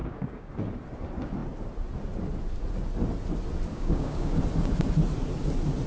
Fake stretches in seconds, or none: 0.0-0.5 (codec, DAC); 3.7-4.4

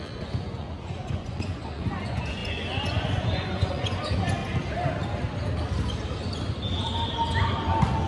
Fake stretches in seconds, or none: 0.0-4.4 (vocoder, Vocos)

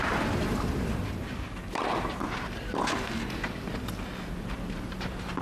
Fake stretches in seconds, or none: 0.0-1.0 (vocoder, BigVGAN v2); 4.2-5.4

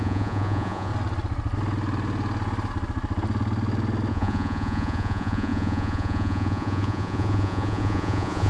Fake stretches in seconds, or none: 0.0-0.9 (vocoder, Vocos); 4.1-8.5

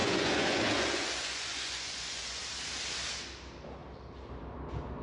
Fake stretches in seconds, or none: 0.0-2.4 (vocoder, Vocos)

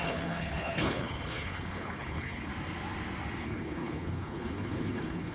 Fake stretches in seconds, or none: 0.0-2.5 (codec, HILCodec); 3.4-5.3

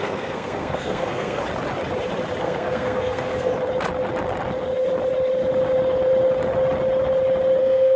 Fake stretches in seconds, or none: 0.0-1.4 (codec, SNAC); 2.4-3.5; 7.6-8.0